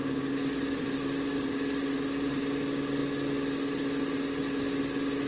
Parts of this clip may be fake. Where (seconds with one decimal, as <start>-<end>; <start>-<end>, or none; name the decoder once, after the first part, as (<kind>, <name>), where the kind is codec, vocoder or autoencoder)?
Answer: none